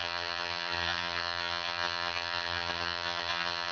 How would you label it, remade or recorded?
remade